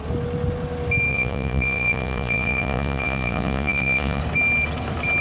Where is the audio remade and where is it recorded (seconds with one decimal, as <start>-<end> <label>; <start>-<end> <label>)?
0.0-1.1 recorded; 1.1-4.2 remade; 4.2-5.2 recorded